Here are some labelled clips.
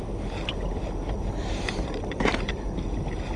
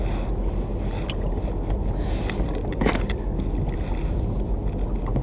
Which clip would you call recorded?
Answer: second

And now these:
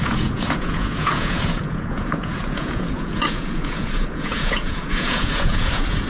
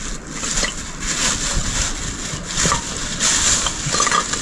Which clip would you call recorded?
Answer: second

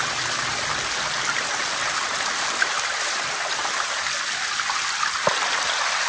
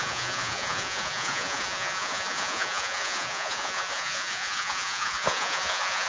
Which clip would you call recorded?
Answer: first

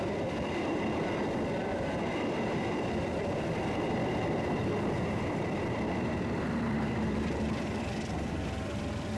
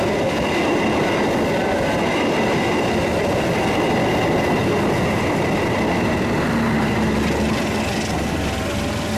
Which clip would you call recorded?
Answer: second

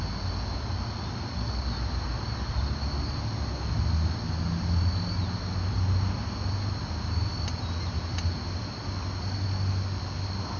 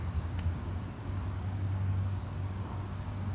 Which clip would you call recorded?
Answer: first